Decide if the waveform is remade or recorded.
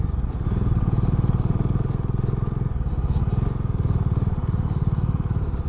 recorded